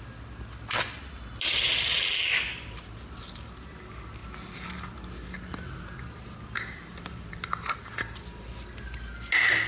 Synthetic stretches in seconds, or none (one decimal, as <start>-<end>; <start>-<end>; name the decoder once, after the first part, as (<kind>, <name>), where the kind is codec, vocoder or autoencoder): none